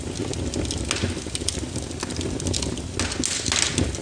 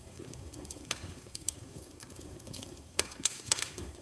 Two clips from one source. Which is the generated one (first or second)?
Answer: second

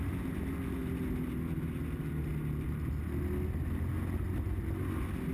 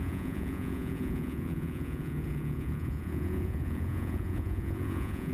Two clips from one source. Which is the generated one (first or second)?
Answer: second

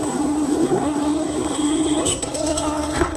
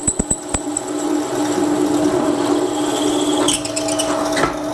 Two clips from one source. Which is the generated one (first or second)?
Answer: first